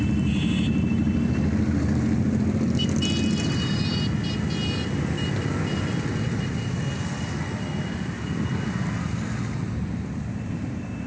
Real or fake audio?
real